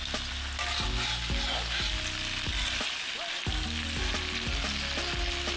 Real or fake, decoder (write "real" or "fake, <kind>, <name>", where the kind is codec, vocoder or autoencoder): real